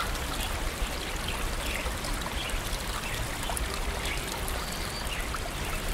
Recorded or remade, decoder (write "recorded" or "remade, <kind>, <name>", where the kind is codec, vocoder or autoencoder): recorded